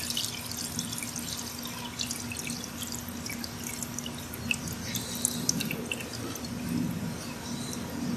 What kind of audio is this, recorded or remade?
recorded